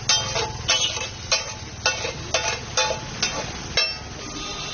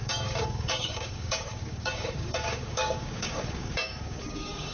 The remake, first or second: second